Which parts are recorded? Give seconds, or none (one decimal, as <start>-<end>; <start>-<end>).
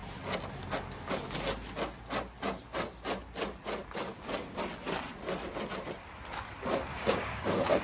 0.0-6.9